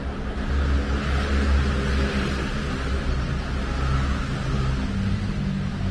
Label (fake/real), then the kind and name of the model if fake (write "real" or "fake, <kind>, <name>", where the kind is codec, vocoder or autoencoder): real